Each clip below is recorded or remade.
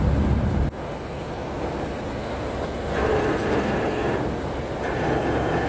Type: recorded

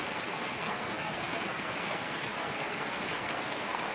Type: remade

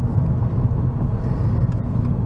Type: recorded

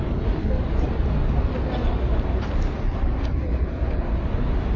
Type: recorded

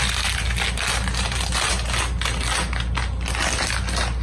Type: recorded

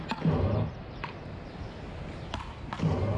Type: recorded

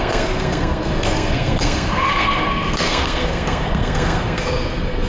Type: remade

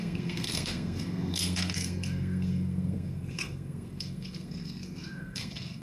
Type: remade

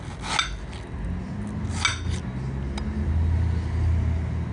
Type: recorded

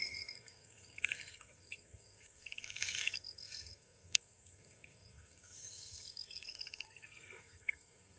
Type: remade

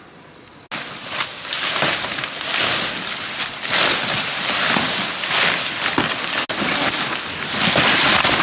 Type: recorded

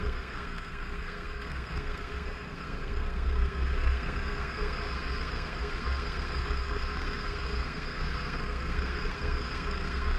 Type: remade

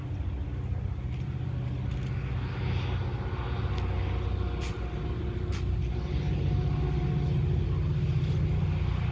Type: recorded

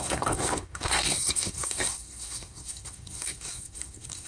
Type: remade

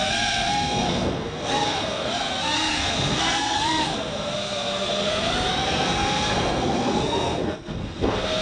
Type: remade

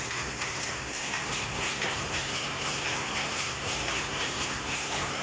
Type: remade